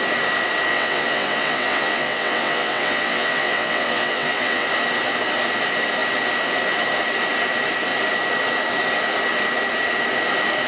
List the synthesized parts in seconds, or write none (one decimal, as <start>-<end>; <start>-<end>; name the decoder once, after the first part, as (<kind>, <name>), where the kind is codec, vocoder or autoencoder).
0.7-4.7 (vocoder, WaveNeXt)